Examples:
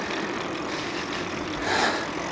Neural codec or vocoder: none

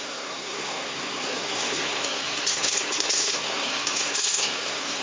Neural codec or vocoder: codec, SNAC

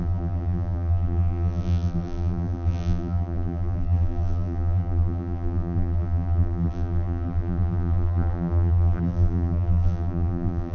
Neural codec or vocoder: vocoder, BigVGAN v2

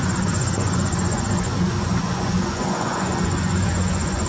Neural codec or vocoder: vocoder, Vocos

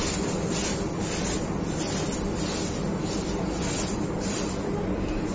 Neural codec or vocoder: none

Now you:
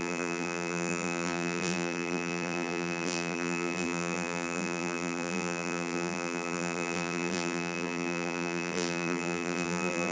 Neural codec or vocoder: vocoder, BigVGAN v2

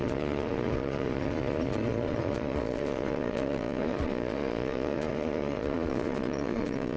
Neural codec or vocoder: vocoder, Vocos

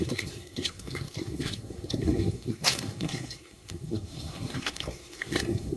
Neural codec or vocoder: codec, SNAC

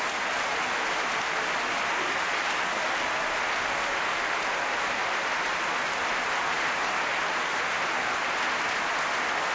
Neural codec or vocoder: none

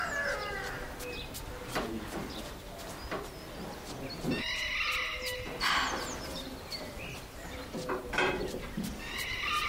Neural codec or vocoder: none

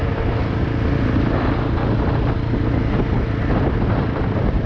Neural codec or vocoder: none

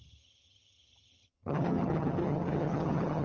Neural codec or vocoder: vocoder, HiFi-GAN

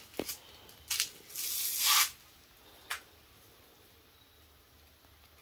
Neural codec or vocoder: none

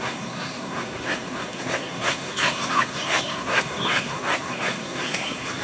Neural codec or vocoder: codec, SNAC